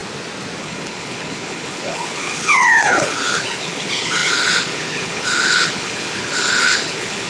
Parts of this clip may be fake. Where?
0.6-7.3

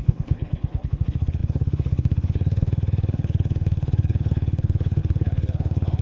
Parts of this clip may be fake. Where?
0.0-6.0

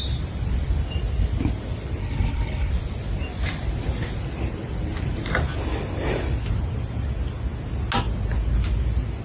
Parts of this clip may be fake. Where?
2.0-2.7

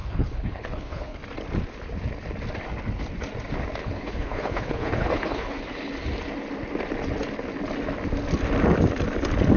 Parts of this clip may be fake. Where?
0.0-1.2; 3.8-5.6

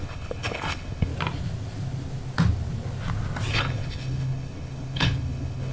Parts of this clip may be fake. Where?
0.0-1.1; 3.5-5.7

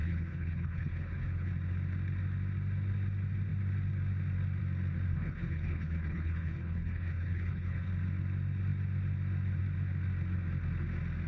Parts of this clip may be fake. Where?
0.0-1.5; 5.1-7.9

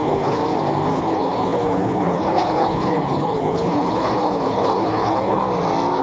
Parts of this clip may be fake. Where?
0.0-0.4; 0.9-5.4

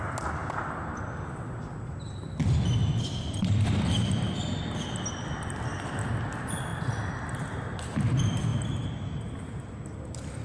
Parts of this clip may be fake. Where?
none